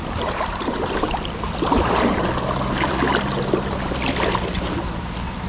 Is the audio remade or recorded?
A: recorded